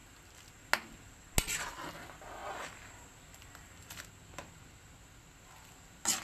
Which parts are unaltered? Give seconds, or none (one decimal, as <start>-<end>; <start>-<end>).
0.0-6.2